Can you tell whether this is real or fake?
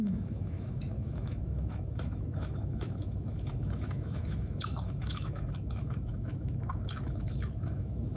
fake